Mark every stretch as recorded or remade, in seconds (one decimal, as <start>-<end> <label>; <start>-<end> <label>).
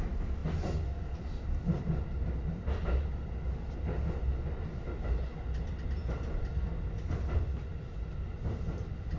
0.0-9.2 recorded